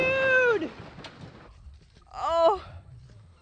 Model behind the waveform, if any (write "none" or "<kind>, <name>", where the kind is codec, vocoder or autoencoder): none